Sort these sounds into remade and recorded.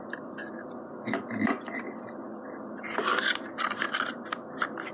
recorded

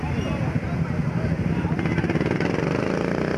recorded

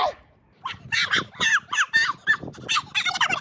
recorded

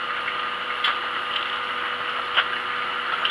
recorded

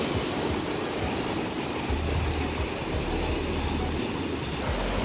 recorded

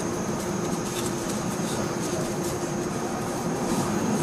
remade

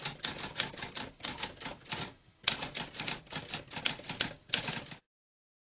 recorded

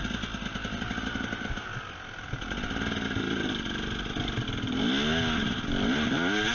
recorded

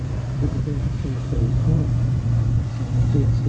remade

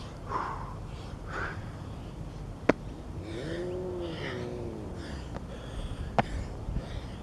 recorded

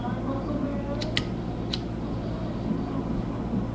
recorded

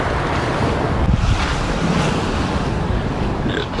recorded